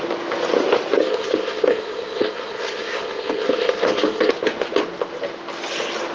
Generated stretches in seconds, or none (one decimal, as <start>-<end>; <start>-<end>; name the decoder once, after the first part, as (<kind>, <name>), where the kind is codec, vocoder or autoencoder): 1.0-4.3 (codec, SNAC)